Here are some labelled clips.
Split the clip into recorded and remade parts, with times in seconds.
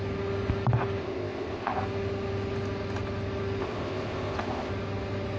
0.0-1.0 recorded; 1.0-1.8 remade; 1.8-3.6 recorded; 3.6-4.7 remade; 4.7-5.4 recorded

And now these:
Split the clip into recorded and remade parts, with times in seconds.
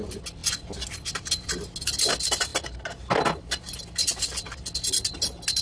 0.0-5.6 recorded